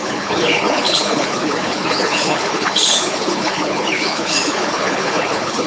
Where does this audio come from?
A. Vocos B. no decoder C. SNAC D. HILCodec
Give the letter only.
D